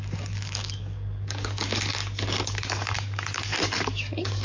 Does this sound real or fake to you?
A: fake